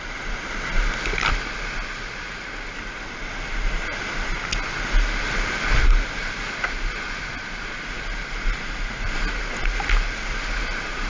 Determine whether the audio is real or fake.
real